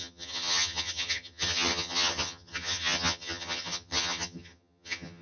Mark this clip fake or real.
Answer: fake